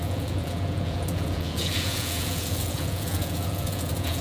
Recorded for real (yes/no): no